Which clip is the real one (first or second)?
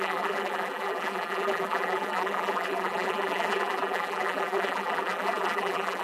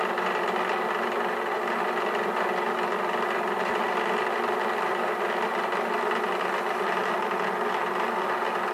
second